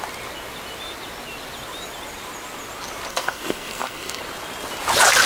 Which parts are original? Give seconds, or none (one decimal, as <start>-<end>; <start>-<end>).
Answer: 0.0-3.1; 4.2-5.3